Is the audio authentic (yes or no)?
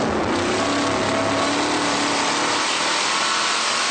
yes